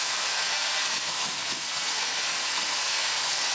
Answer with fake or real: fake